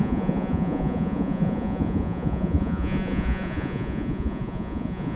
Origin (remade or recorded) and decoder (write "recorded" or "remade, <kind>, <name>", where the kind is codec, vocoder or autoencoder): remade, vocoder, Vocos